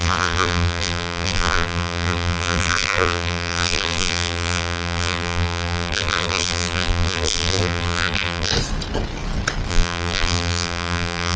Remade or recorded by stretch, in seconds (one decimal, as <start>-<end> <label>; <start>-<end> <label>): 0.0-8.5 remade; 8.5-9.7 recorded; 9.7-11.4 remade